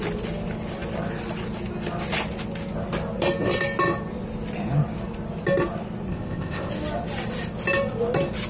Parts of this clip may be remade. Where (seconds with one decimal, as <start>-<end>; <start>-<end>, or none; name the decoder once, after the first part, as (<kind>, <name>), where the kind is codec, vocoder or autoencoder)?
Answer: 6.1-6.7 (codec, ZipCodec)

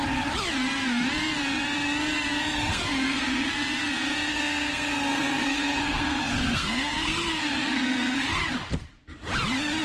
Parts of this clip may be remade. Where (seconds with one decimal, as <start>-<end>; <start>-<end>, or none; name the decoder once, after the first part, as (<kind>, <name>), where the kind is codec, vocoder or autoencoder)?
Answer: 2.7-3.5 (codec, SNAC); 4.3-8.4